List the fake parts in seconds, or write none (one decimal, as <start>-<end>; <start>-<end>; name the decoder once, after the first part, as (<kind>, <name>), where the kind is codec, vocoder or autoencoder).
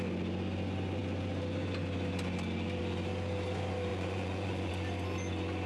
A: 3.9-4.7 (vocoder, Vocos)